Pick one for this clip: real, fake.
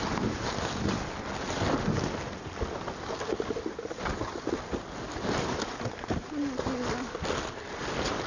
real